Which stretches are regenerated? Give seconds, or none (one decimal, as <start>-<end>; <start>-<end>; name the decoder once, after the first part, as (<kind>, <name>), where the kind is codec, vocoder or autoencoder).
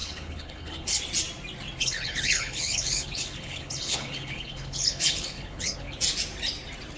0.0-1.0 (codec, HILCodec); 1.8-6.0